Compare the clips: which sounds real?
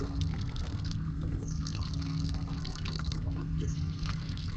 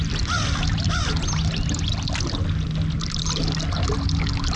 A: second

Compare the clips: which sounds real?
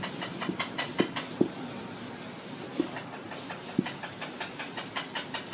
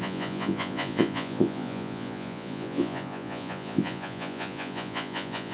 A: first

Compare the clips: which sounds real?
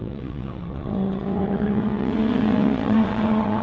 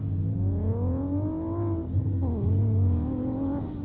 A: second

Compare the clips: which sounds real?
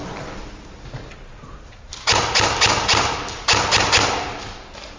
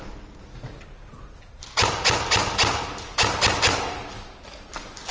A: first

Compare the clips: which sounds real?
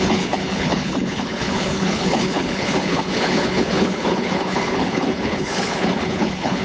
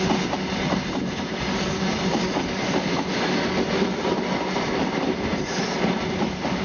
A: second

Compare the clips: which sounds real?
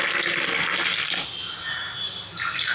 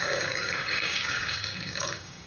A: first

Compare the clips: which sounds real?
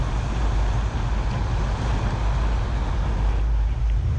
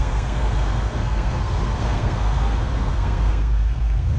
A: first